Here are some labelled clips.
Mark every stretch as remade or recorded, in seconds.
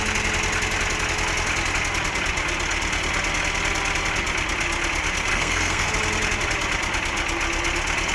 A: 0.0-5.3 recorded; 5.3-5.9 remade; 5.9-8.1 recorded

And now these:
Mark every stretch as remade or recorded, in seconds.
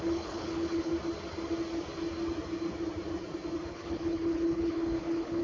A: 0.0-0.9 remade; 0.9-3.7 recorded; 3.7-5.4 remade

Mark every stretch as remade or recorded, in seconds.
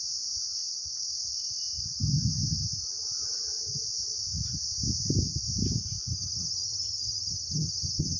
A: 0.0-6.1 recorded; 6.1-8.2 remade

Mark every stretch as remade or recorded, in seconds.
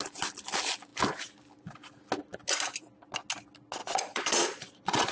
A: 0.0-3.8 recorded; 3.8-5.1 remade